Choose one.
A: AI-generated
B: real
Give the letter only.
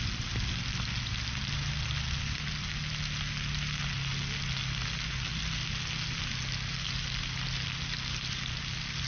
B